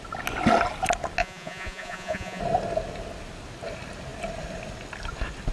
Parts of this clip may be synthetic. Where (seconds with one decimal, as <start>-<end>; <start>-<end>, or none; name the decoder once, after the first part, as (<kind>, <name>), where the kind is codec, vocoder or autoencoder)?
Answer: 1.2-2.4 (vocoder, Vocos)